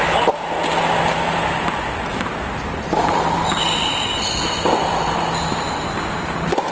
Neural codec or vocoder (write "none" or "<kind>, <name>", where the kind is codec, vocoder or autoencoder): none